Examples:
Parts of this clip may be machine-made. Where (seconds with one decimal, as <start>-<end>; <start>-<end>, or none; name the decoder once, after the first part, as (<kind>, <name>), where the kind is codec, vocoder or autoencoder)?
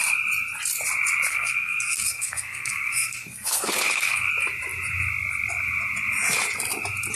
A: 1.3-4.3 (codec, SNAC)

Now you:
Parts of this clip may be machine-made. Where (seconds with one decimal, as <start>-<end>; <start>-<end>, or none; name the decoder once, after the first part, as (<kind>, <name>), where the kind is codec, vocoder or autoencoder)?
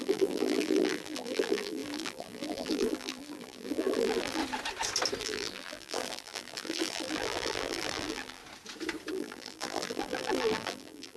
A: 0.0-4.4 (vocoder, BigVGAN v2); 5.2-8.4; 9.1-11.2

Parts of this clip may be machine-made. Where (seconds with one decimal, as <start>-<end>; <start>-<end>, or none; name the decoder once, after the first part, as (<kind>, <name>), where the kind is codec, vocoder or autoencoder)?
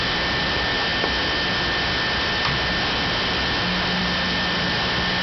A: none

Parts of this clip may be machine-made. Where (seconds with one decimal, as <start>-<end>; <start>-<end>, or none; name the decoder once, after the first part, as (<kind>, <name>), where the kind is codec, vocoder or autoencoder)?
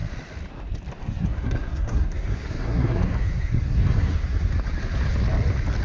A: 1.0-4.5 (codec, SNAC)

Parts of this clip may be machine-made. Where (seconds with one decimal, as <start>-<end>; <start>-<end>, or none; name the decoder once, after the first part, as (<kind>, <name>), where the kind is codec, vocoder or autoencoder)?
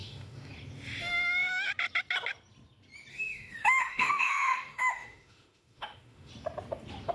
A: 0.0-0.5 (autoencoder, DAC-VAE); 1.0-1.7; 3.1-6.3